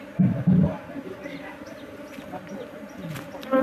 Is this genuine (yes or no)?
yes